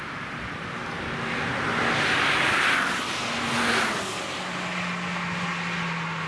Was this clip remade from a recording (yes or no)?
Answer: no